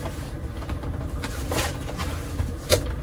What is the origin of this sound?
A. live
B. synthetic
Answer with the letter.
A